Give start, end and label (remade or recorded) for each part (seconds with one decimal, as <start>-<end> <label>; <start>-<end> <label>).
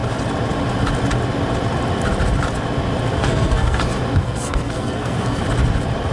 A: 0.0-3.2 recorded; 3.2-3.8 remade; 3.8-4.2 recorded; 4.2-5.4 remade; 5.4-6.1 recorded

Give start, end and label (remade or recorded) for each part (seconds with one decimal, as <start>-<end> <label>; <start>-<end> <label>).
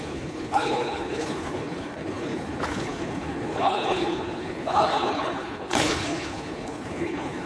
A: 0.0-7.5 remade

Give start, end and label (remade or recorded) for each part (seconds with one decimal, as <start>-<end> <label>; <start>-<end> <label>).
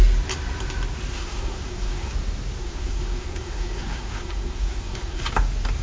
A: 0.0-1.1 recorded; 1.1-2.1 remade; 2.1-2.6 recorded; 2.6-5.2 remade; 5.2-5.8 recorded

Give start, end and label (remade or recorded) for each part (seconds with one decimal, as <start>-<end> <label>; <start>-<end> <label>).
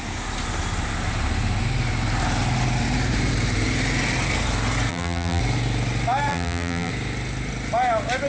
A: 0.0-4.9 recorded; 4.9-5.4 remade; 5.4-6.3 recorded; 6.3-6.9 remade; 6.9-8.3 recorded